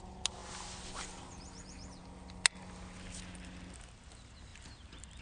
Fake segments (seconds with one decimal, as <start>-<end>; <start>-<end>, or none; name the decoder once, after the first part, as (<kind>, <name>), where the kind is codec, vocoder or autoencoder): none